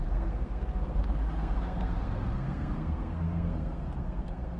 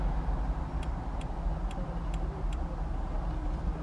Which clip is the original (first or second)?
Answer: second